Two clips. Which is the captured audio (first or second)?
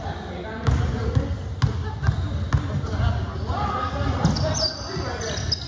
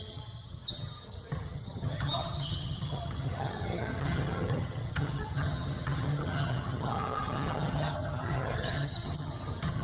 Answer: first